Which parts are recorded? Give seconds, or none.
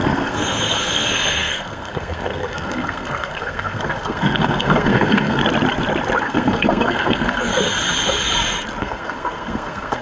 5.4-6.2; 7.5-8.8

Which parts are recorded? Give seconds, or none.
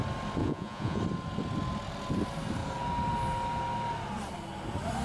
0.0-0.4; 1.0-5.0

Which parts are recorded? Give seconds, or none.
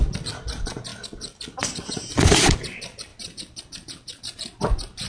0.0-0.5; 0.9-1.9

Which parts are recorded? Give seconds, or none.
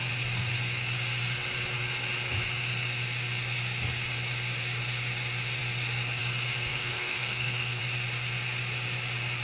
0.0-6.7; 7.8-9.4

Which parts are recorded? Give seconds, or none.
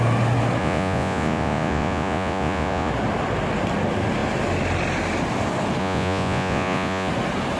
0.0-0.6; 2.9-5.8; 7.1-7.6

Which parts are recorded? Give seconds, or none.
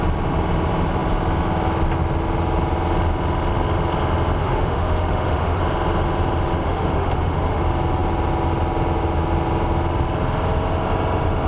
0.0-4.4; 5.6-6.6; 7.6-11.5